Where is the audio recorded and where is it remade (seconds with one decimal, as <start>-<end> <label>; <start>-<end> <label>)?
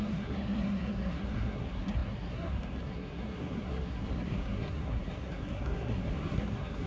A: 0.0-6.9 remade